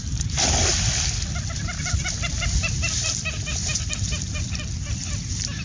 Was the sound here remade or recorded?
recorded